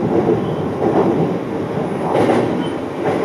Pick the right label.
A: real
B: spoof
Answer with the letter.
A